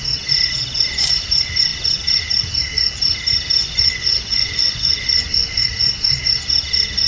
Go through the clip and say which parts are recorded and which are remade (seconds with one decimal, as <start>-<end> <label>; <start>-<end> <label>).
0.0-3.6 recorded; 3.6-5.6 remade; 5.6-7.1 recorded